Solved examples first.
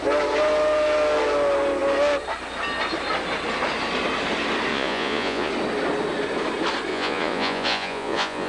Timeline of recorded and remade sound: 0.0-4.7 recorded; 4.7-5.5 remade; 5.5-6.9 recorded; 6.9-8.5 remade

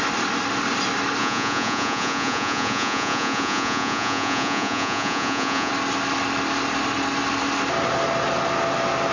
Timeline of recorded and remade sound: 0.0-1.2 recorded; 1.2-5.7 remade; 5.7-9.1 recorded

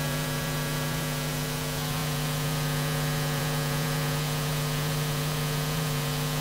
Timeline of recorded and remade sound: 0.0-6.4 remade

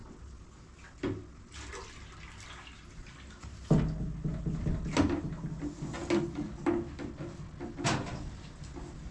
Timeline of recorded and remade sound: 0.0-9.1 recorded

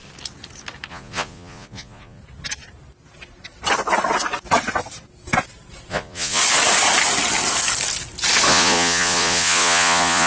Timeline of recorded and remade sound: 0.0-0.9 recorded; 0.9-2.2 remade; 2.2-5.9 recorded; 5.9-6.4 remade; 6.4-8.5 recorded; 8.5-10.3 remade

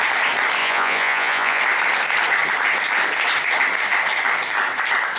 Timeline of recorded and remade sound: 0.0-0.6 recorded; 0.6-1.6 remade; 1.6-5.2 recorded

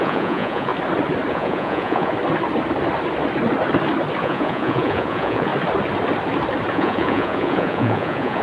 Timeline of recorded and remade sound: 0.0-0.7 remade; 0.7-1.3 recorded; 1.3-2.1 remade; 2.1-4.2 recorded; 4.2-5.5 remade; 5.5-6.7 recorded; 6.7-8.4 remade

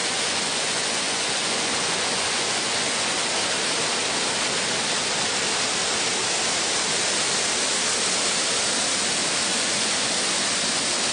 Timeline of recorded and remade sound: 0.0-3.3 remade; 3.3-9.5 recorded; 9.5-10.1 remade; 10.1-11.1 recorded